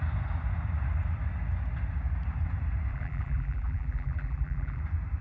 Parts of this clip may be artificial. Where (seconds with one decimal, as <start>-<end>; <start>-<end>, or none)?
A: 2.9-4.8